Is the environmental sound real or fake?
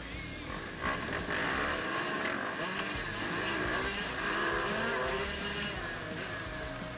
real